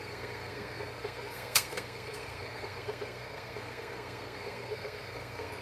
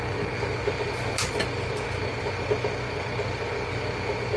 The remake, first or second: first